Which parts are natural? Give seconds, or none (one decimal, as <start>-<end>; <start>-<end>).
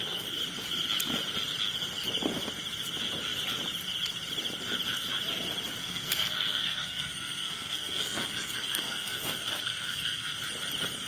0.0-5.8; 10.4-11.1